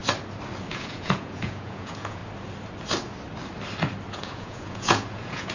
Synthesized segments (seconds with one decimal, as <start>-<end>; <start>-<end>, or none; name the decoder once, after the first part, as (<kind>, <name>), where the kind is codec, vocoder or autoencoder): 0.7-2.2 (vocoder, Vocos); 4.1-5.5